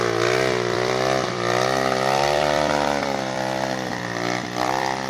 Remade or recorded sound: remade